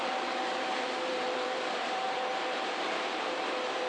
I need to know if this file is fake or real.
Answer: fake